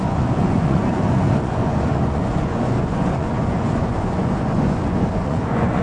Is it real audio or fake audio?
fake